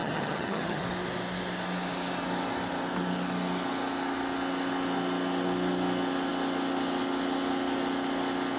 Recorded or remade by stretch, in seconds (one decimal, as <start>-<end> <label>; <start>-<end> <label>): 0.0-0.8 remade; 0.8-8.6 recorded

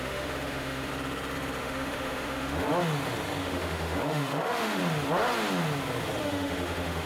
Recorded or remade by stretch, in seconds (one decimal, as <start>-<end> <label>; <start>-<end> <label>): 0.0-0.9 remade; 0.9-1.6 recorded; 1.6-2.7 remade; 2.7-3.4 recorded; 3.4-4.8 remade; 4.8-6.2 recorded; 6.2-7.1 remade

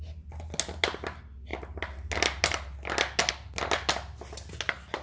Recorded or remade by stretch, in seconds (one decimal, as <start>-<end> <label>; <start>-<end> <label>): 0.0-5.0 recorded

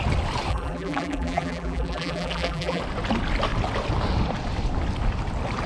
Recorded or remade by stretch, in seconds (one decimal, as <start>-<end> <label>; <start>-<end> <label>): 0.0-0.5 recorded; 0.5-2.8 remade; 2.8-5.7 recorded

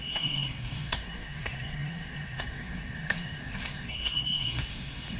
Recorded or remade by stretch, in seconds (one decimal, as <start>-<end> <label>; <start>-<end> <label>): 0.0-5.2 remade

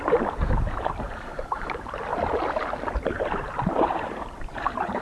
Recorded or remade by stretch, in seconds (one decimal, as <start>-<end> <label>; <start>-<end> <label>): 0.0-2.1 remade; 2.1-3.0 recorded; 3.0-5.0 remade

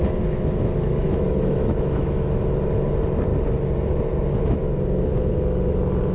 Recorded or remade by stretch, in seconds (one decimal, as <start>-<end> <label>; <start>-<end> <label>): 0.0-2.4 remade; 2.4-6.1 recorded

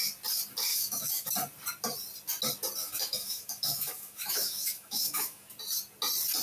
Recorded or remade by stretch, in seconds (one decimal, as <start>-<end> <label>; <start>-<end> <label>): 0.0-0.7 recorded; 0.7-1.3 remade; 1.3-2.8 recorded; 2.8-5.5 remade; 5.5-6.4 recorded